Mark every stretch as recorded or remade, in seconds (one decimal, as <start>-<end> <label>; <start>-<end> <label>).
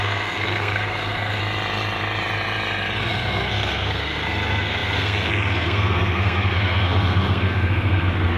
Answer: 0.0-1.4 remade; 1.4-3.0 recorded; 3.0-8.4 remade